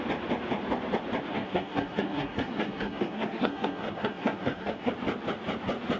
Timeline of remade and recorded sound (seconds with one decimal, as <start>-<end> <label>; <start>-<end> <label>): 0.0-1.3 recorded; 1.3-4.9 remade; 4.9-6.0 recorded